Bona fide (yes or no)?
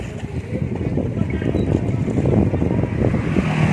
yes